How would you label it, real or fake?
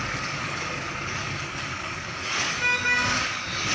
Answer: fake